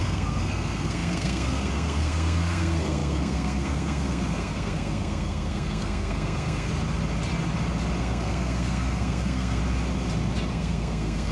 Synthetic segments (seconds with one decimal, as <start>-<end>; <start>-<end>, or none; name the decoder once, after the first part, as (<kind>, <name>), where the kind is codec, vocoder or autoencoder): 0.0-6.7 (codec, SNAC); 8.0-9.6; 10.5-11.3

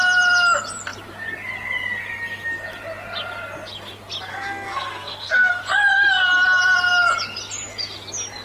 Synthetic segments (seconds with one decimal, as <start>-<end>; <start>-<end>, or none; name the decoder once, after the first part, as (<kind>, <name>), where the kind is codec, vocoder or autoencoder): 4.3-5.6 (codec, SNAC)

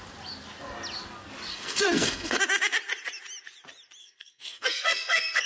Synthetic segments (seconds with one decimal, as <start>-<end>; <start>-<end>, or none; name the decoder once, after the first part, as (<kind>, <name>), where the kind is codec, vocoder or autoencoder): 1.5-2.4 (codec, SNAC); 4.0-5.5

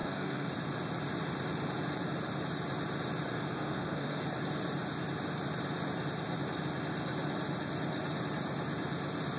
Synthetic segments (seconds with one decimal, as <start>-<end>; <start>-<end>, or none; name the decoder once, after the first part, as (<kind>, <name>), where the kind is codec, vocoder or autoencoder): 0.0-0.5 (codec, SNAC); 3.3-4.2

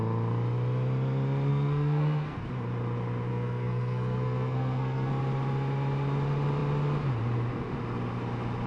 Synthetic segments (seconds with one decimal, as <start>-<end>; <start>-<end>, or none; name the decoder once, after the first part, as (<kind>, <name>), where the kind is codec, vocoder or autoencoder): 1.5-2.4 (codec, SNAC); 3.3-5.1

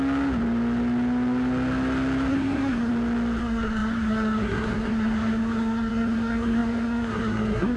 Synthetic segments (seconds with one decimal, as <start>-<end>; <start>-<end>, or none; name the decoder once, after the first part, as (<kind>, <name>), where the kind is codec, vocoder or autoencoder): 2.3-2.9 (codec, SNAC); 3.4-7.8

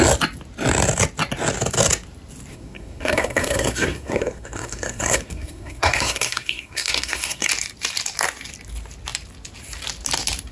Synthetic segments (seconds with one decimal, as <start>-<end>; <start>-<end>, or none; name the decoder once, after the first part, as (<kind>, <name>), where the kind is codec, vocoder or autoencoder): 2.5-7.5 (codec, SNAC)